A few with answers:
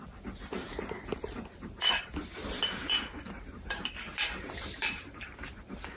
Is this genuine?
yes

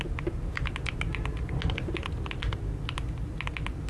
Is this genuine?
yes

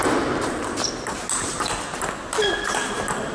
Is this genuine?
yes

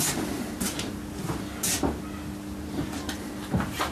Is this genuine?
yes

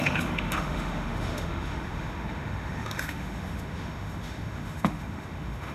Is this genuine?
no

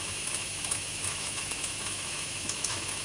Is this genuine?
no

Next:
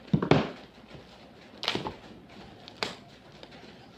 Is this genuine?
yes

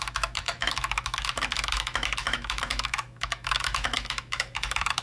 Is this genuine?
no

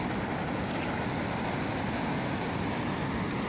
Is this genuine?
yes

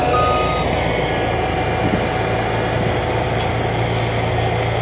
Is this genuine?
yes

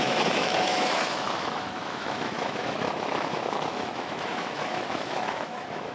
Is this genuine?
no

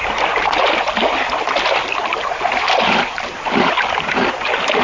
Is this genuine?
yes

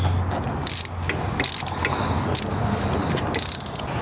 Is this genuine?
yes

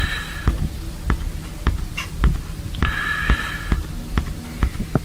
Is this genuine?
yes